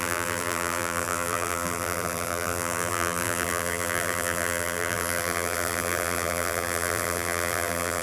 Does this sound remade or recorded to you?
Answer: remade